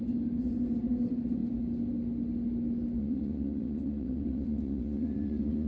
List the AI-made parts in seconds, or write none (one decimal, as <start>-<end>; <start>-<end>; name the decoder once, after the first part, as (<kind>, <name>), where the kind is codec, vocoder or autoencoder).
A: 3.0-5.7 (vocoder, Vocos)